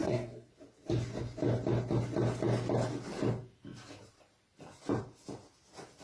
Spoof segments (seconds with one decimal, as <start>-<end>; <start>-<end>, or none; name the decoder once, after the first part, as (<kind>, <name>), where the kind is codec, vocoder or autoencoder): 0.0-0.5 (codec, SNAC)